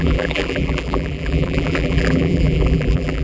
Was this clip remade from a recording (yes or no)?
yes